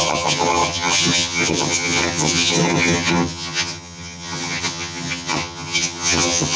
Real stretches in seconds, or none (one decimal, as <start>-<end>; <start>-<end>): none